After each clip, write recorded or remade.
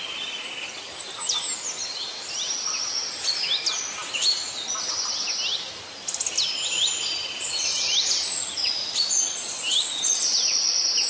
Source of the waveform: recorded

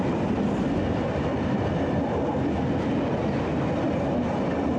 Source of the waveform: recorded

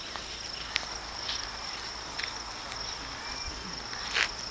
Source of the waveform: recorded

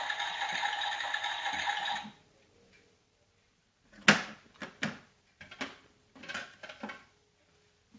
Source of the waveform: recorded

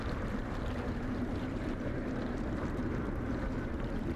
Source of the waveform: remade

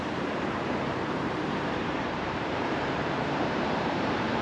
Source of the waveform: remade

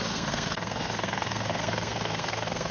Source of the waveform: remade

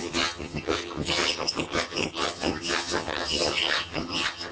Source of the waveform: remade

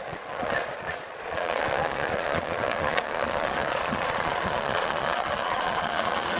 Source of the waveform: remade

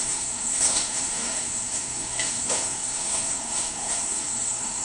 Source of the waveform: remade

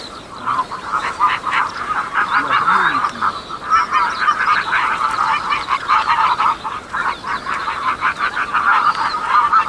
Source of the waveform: remade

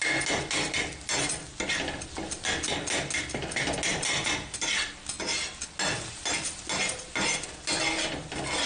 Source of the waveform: recorded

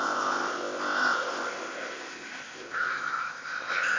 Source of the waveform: remade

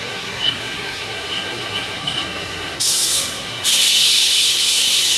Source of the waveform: remade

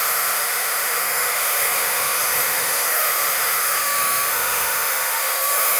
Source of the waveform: remade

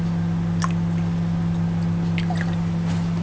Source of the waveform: recorded